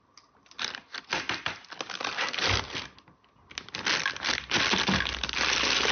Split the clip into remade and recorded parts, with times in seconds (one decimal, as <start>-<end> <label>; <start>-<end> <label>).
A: 0.0-5.9 recorded